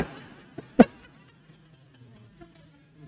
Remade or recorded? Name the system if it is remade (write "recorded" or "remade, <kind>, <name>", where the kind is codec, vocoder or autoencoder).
recorded